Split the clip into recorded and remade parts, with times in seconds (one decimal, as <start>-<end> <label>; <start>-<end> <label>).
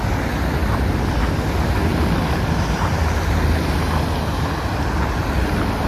0.0-5.9 recorded